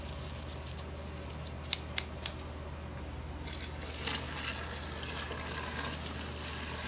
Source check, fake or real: real